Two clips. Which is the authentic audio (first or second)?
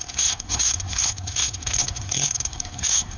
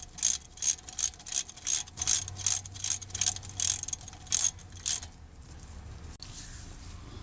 second